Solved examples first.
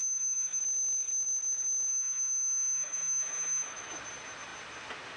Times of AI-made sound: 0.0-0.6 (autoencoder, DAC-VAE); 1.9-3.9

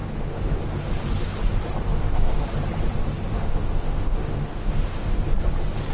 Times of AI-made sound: 0.0-0.6 (autoencoder, DAC-VAE); 1.9-2.4; 3.3-5.2